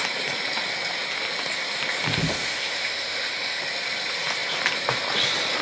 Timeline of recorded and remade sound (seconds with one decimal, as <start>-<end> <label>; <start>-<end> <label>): 0.0-2.4 recorded; 2.4-3.6 remade; 3.6-5.6 recorded